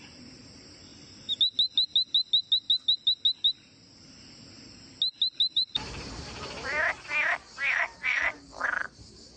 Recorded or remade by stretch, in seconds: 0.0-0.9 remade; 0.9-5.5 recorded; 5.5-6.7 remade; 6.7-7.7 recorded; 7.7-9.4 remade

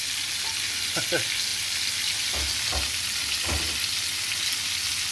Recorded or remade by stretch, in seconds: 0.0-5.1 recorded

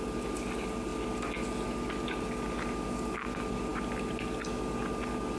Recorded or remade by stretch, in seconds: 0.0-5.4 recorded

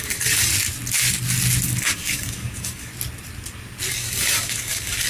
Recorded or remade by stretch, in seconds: 0.0-0.5 remade; 0.5-1.8 recorded; 1.8-2.9 remade; 2.9-3.9 recorded; 3.9-5.1 remade

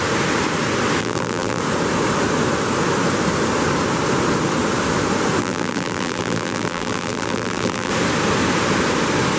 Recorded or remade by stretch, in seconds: 0.0-1.0 recorded; 1.0-1.6 remade; 1.6-5.4 recorded; 5.4-7.9 remade; 7.9-9.4 recorded

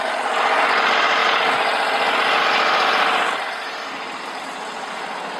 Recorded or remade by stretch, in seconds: 0.0-5.4 recorded